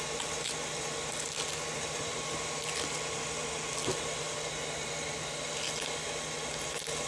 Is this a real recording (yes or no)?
yes